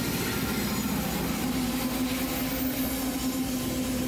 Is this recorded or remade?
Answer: recorded